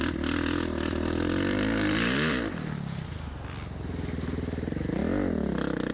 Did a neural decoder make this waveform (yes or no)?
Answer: no